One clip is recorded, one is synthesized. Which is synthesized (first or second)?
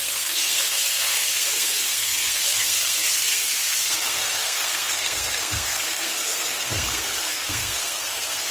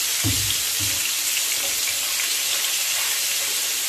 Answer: first